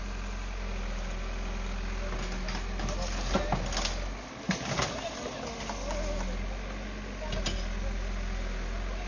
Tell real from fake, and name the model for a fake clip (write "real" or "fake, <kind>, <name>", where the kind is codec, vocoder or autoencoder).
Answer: real